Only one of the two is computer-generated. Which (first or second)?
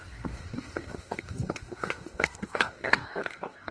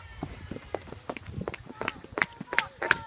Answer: first